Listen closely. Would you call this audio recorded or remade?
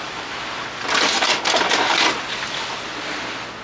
recorded